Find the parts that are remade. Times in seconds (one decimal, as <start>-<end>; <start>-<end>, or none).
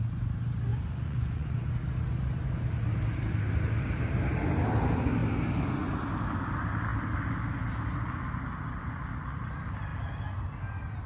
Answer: 0.7-1.7